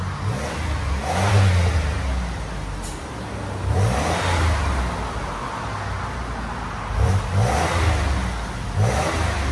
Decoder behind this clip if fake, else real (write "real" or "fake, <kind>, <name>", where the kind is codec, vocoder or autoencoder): real